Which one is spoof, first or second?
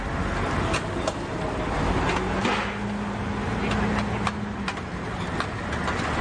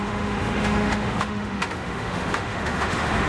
second